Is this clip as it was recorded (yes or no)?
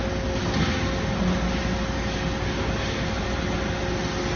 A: yes